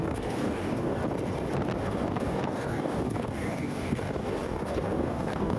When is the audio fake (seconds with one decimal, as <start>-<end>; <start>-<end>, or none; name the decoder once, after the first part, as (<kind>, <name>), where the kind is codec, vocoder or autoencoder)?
0.0-1.0 (codec, DAC); 1.8-5.6